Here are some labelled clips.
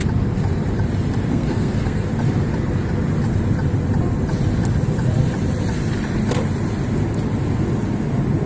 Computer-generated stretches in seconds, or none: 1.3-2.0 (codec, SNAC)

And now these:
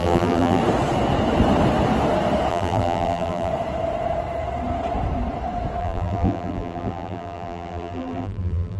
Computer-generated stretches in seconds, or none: 0.0-0.6 (vocoder, BigVGAN v2); 2.5-3.5; 5.8-8.8

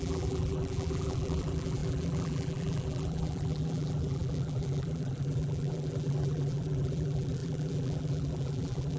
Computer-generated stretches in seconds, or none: 0.0-9.0 (vocoder, BigVGAN v2)

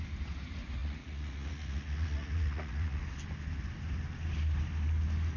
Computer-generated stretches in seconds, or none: 0.8-3.0 (vocoder, Vocos)

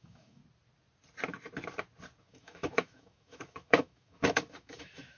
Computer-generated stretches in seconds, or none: 0.0-0.4 (autoencoder, DAC-VAE); 2.2-5.2